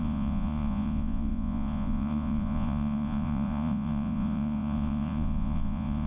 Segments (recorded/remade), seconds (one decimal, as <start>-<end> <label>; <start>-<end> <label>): 0.0-6.1 remade